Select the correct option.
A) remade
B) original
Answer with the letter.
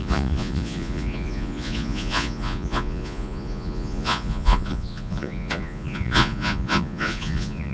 A